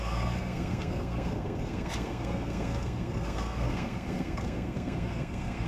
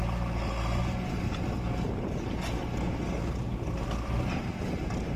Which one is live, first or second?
second